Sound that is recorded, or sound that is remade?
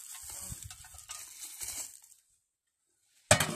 recorded